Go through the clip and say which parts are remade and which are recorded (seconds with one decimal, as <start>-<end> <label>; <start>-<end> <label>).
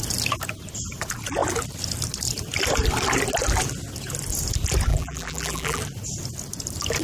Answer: 0.0-4.9 recorded; 4.9-5.8 remade; 5.8-7.0 recorded